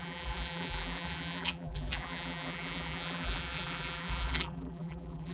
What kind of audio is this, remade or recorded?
remade